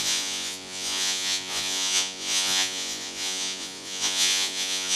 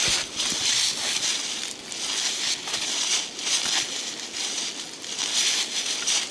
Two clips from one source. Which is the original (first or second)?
second